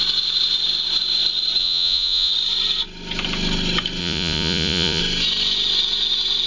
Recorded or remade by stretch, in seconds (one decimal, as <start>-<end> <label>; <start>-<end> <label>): 0.0-1.6 recorded; 1.6-2.3 remade; 2.3-4.0 recorded; 4.0-5.0 remade; 5.0-6.5 recorded